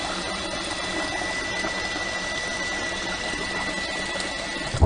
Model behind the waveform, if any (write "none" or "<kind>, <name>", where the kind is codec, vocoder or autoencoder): none